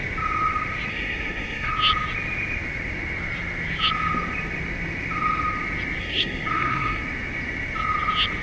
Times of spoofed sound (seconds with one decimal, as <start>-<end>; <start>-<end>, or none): 0.9-1.7; 6.0-7.0